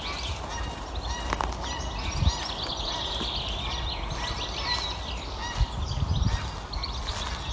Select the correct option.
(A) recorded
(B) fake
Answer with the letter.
A